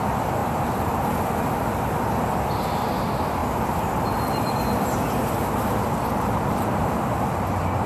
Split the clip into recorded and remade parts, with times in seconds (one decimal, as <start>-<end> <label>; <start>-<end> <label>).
0.0-7.9 recorded